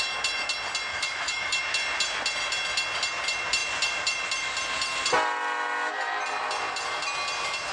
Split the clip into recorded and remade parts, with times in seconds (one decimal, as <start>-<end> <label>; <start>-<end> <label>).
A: 0.0-0.9 recorded; 0.9-1.6 remade; 1.6-7.7 recorded